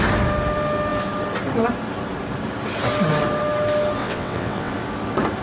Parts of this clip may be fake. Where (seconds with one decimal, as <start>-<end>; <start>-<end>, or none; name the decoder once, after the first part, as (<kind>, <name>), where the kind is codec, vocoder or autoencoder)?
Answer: 4.0-4.7 (vocoder, WaveNeXt)